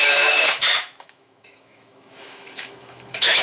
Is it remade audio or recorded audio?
remade